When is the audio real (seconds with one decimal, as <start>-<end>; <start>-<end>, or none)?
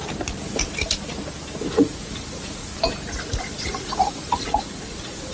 0.0-1.7; 2.7-3.4